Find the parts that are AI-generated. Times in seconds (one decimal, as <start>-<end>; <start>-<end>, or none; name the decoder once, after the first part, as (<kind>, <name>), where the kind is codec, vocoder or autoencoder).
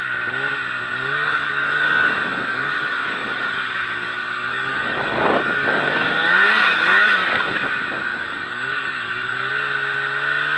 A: 0.9-2.1 (codec, DAC); 2.5-7.4; 8.1-9.5